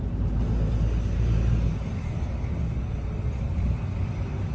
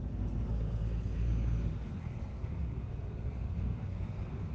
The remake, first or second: second